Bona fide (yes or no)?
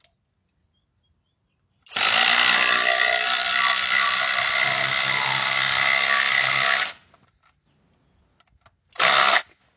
yes